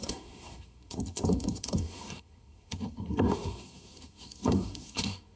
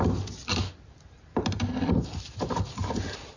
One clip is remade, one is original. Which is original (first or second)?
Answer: second